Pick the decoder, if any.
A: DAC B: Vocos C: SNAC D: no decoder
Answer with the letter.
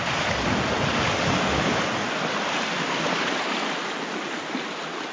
D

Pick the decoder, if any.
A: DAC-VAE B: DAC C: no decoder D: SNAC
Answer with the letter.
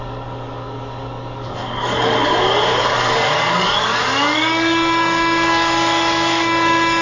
B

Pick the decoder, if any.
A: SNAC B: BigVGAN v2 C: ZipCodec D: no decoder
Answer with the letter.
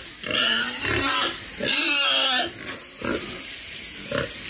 D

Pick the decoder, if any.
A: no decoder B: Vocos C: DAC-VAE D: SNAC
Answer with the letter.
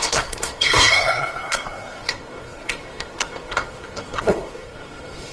D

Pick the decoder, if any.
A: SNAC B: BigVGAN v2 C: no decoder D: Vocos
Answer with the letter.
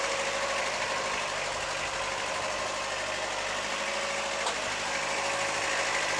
C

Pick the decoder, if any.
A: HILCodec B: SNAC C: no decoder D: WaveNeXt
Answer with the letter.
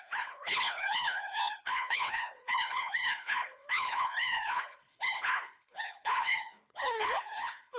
A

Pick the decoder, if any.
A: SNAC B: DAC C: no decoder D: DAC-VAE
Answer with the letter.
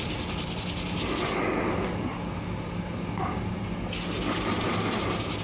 C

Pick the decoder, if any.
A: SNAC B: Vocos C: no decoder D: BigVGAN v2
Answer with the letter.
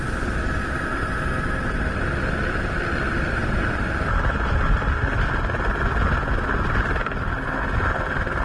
C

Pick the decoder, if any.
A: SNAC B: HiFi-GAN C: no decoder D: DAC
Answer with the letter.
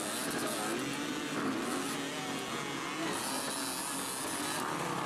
C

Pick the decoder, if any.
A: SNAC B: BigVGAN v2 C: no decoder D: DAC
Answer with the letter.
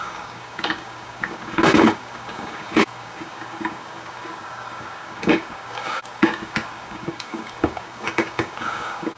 D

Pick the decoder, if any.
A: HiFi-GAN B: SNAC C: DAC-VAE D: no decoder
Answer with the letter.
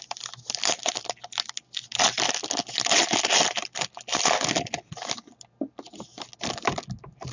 D